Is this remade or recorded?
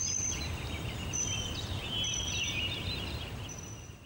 remade